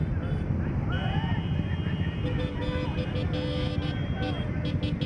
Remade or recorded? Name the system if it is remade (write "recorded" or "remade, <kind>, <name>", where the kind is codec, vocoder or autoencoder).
recorded